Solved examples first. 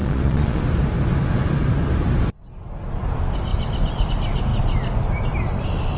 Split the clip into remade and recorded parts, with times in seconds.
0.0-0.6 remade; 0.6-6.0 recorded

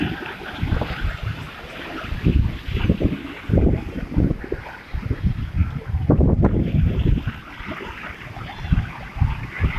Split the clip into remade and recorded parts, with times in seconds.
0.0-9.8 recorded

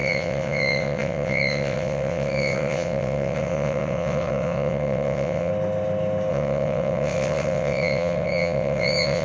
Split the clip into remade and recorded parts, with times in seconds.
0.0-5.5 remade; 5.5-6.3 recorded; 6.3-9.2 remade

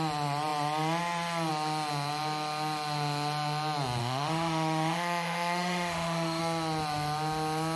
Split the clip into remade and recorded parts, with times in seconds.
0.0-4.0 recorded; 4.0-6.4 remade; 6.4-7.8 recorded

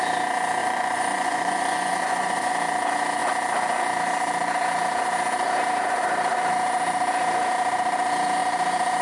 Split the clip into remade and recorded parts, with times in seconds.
0.0-0.6 recorded; 0.6-2.5 remade; 2.5-9.0 recorded